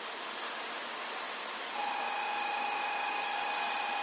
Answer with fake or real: real